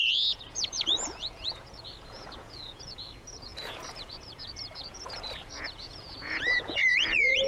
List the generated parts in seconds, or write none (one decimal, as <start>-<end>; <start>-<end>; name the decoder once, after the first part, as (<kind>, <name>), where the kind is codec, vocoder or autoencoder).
0.0-7.5 (vocoder, Vocos)